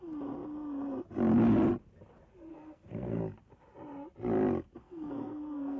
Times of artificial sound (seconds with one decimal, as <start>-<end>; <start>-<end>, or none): 2.5-3.2; 4.8-5.8